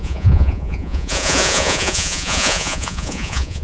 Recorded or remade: remade